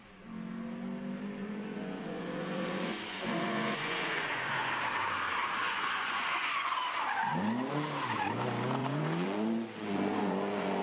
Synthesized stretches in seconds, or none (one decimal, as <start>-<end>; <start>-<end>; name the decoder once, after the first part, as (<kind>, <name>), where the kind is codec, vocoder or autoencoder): 1.4-4.7 (vocoder, Vocos); 5.6-6.8; 8.8-10.8